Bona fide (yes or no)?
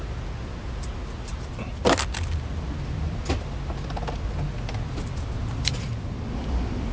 yes